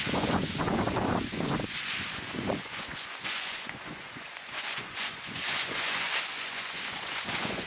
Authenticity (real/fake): fake